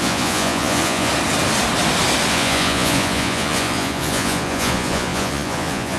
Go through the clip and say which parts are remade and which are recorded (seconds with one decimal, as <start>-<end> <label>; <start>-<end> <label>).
0.0-1.1 remade; 1.1-2.3 recorded; 2.3-6.0 remade